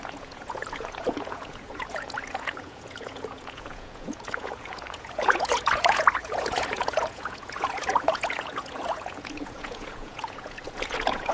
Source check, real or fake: fake